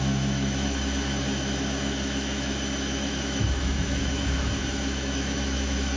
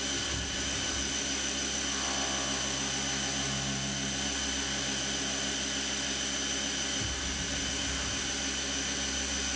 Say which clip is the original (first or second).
second